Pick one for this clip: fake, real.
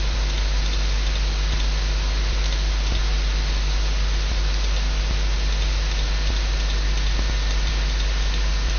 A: real